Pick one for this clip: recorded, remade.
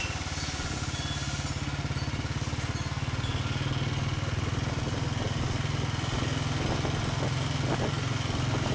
recorded